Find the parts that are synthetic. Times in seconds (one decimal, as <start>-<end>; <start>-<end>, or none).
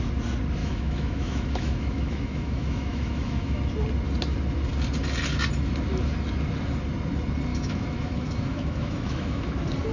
0.6-3.6; 7.5-9.5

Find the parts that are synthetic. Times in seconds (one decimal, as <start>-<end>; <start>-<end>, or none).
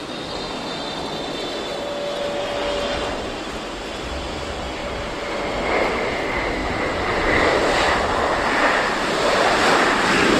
4.8-5.4; 6.6-10.0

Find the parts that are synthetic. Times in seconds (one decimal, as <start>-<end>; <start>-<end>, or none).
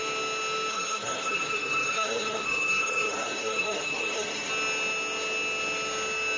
0.7-4.5